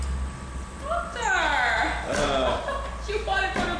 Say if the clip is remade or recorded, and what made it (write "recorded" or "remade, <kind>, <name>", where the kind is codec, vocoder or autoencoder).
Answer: recorded